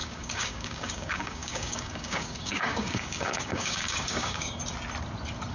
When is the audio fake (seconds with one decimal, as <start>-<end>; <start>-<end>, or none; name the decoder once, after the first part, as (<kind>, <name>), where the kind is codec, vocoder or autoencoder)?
0.0-4.6 (codec, DAC)